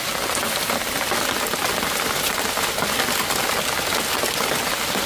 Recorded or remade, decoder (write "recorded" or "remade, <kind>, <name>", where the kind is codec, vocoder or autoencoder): recorded